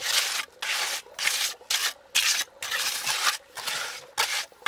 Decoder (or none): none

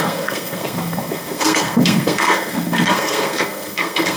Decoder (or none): codec, SNAC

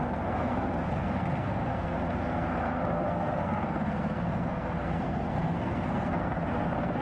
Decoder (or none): codec, SNAC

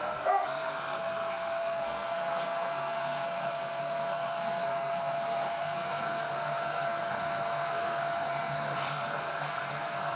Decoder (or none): codec, SNAC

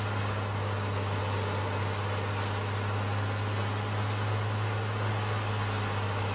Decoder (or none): none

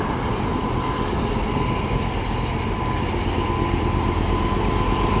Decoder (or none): none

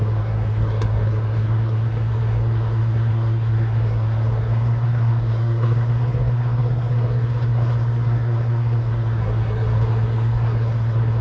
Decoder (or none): codec, SNAC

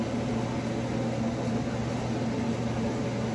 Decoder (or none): none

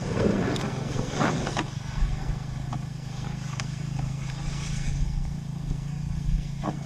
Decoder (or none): codec, SNAC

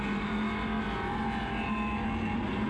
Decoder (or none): none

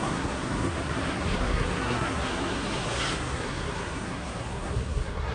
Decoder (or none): codec, SNAC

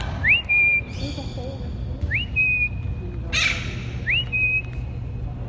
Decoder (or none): none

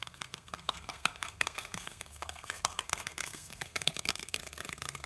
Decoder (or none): codec, SNAC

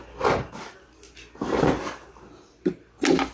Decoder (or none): none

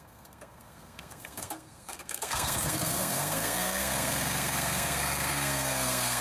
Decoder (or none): codec, SNAC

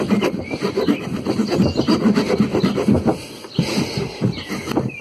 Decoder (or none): none